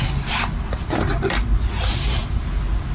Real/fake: real